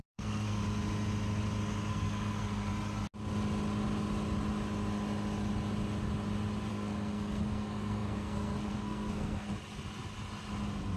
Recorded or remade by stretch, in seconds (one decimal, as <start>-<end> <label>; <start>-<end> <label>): 0.0-0.6 remade; 0.6-1.9 recorded; 1.9-2.7 remade; 2.7-6.7 recorded; 6.7-9.5 remade; 9.5-11.0 recorded